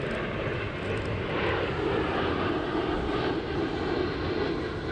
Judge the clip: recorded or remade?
recorded